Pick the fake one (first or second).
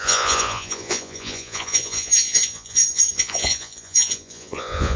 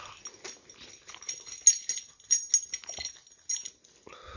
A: first